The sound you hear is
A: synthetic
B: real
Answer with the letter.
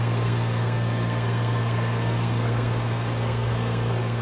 A